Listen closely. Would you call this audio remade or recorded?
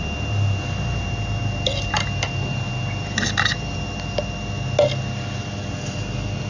recorded